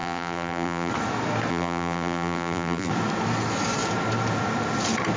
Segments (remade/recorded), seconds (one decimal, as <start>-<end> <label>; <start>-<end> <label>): 0.0-0.9 remade; 0.9-1.5 recorded; 1.5-2.9 remade; 2.9-5.2 recorded